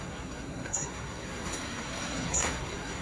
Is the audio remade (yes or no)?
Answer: yes